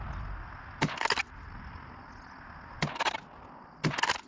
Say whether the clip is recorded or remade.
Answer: recorded